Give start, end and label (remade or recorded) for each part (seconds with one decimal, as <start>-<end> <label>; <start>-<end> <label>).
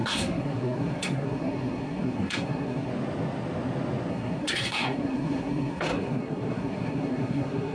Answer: 0.0-2.9 remade; 2.9-4.1 recorded; 4.1-7.7 remade